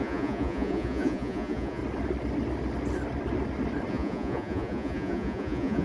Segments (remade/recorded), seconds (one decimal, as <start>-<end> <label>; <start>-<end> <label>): 0.0-1.8 remade; 1.8-3.9 recorded; 3.9-5.8 remade